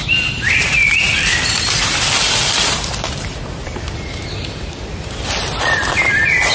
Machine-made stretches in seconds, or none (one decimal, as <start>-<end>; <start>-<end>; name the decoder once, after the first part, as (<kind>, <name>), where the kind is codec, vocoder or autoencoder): 1.3-5.2 (vocoder, BigVGAN v2)